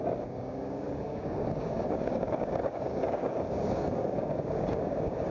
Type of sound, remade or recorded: remade